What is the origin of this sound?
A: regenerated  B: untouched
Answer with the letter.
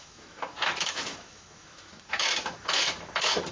A